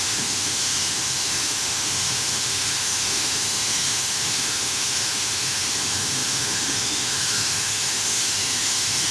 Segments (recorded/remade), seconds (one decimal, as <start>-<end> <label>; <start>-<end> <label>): 0.0-9.1 remade